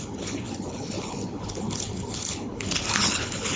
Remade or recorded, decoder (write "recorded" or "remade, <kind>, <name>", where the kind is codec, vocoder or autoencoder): remade, codec, HILCodec